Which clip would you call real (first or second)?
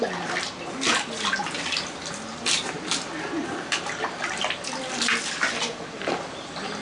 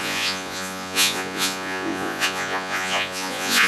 first